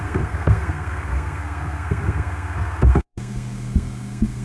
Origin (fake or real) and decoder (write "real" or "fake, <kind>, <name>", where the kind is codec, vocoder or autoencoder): fake, codec, SNAC